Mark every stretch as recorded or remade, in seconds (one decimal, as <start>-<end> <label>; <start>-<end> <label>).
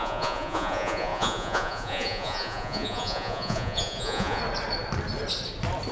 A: 0.0-4.4 remade; 4.4-5.9 recorded